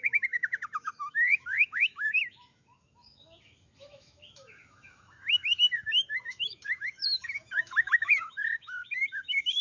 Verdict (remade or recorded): remade